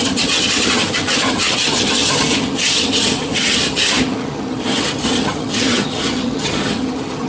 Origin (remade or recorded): remade